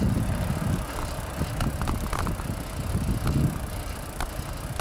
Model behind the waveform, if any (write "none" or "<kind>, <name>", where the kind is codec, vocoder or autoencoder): none